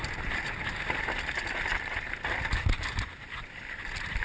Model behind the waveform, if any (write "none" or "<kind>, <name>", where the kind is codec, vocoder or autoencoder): none